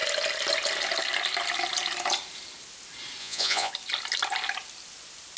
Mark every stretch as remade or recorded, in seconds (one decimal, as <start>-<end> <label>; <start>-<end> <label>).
0.0-3.2 recorded; 3.2-3.7 remade; 3.7-5.4 recorded